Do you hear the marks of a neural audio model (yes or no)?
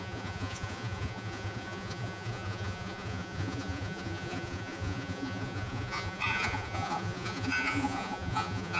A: yes